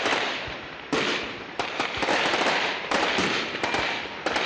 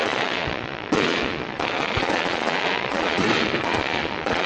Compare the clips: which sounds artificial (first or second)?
second